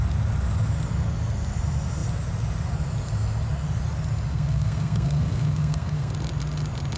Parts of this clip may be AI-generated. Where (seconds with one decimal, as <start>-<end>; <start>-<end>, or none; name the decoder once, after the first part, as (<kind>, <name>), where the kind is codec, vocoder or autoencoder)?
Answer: 4.3-6.1 (codec, SNAC)